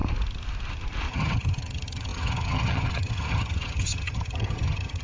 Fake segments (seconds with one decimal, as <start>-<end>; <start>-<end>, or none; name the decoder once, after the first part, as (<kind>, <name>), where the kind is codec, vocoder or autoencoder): 1.1-5.0 (vocoder, HiFi-GAN)